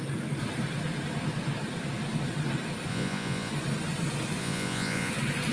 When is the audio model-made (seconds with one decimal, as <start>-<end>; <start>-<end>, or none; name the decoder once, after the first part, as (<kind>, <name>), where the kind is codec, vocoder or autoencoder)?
2.9-3.5 (vocoder, Vocos); 4.4-5.1